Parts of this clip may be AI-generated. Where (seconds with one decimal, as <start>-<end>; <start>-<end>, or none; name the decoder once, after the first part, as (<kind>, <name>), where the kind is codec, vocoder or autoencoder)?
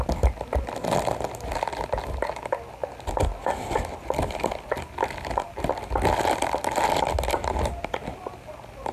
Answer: none